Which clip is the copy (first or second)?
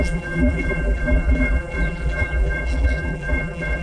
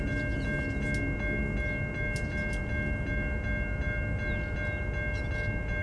first